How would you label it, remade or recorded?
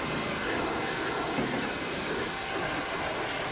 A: recorded